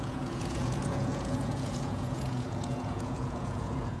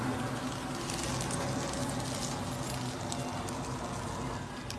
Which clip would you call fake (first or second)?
first